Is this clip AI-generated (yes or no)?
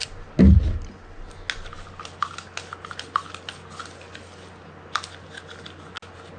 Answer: no